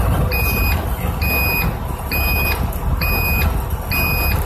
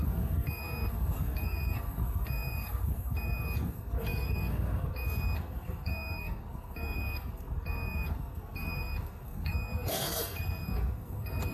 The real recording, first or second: first